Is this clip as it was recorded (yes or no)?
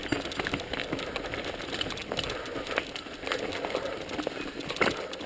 yes